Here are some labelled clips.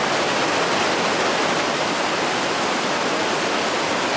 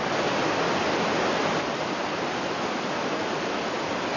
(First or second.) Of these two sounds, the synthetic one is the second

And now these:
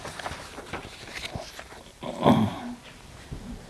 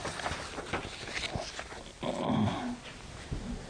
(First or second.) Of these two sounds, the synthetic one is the first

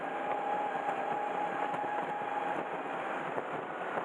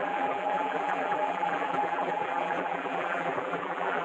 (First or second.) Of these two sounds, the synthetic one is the second